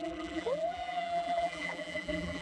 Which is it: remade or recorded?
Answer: remade